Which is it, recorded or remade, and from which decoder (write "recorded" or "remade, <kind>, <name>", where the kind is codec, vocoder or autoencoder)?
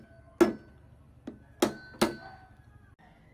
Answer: recorded